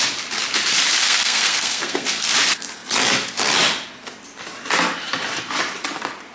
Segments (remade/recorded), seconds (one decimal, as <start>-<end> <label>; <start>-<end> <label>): 0.0-1.0 recorded; 1.0-2.3 remade; 2.3-6.3 recorded